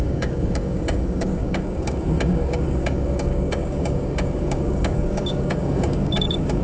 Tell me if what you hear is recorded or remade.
remade